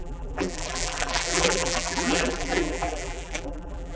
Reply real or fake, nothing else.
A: fake